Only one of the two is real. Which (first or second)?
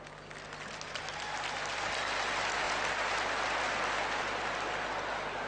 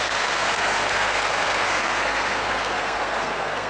first